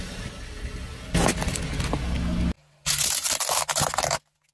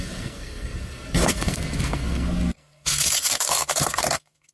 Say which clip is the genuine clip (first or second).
first